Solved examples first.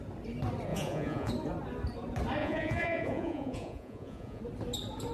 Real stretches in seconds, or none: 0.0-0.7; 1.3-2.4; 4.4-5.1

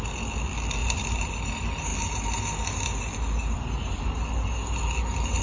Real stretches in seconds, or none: 0.0-0.8; 1.4-5.4

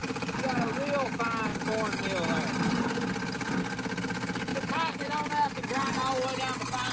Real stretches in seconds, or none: 0.6-4.5; 6.1-6.9

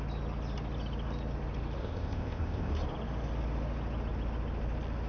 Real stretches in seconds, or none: 0.0-1.8; 2.7-5.1

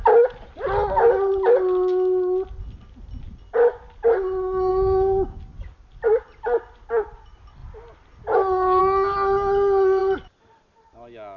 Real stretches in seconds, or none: 0.0-4.7; 5.4-11.4